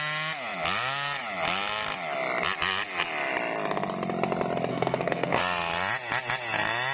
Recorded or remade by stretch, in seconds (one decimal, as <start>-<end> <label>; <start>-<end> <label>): 0.0-4.7 recorded; 4.7-5.4 remade; 5.4-6.9 recorded